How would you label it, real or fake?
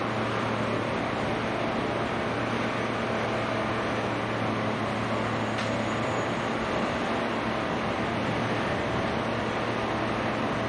real